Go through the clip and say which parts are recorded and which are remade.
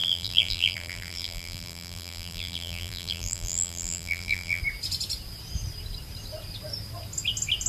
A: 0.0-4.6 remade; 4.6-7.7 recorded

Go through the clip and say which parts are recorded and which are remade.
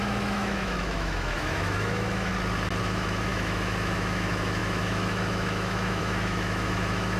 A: 0.0-2.3 remade; 2.3-2.8 recorded; 2.8-7.2 remade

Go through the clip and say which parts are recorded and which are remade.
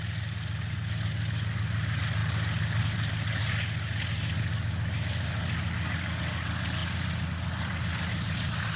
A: 0.0-8.8 recorded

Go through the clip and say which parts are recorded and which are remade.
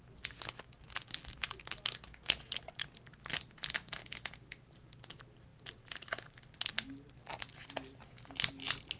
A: 0.0-9.0 recorded